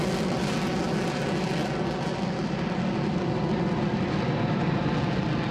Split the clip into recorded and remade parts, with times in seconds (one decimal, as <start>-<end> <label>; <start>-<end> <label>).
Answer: 0.0-5.5 recorded